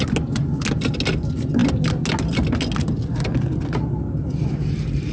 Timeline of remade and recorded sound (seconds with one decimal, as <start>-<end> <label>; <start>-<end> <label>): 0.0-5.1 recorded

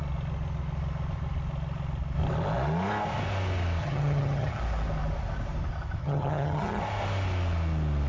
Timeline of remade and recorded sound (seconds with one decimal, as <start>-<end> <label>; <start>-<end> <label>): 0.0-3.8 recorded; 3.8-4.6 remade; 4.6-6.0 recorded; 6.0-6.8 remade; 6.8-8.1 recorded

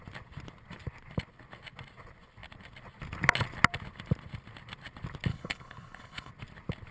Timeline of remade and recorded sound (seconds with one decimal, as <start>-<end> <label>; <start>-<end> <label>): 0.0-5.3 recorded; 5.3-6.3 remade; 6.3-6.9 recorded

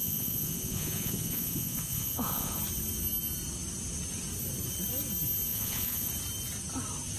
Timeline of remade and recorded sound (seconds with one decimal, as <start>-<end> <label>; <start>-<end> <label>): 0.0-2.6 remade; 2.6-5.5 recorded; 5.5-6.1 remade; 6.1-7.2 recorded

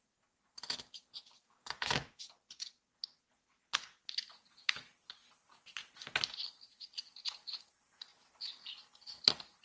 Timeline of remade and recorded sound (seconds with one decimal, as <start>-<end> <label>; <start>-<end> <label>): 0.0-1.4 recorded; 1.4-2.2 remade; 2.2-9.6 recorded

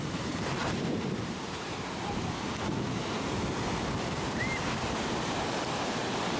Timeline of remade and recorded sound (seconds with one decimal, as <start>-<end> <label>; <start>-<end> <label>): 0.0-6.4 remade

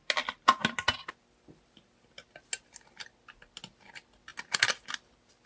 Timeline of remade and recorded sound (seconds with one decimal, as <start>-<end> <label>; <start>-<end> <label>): 0.0-5.5 recorded

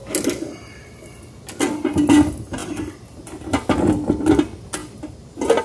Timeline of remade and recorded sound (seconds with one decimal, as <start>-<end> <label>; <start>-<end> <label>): 0.0-5.6 recorded